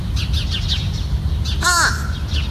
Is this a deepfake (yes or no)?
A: no